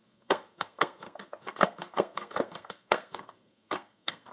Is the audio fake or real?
fake